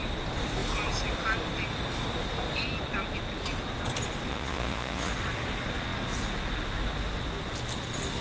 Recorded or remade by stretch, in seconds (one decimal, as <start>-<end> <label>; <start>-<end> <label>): 0.0-4.3 recorded; 4.3-5.1 remade; 5.1-8.2 recorded